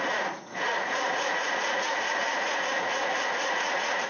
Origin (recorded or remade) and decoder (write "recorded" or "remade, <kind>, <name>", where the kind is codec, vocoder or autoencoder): remade, vocoder, Vocos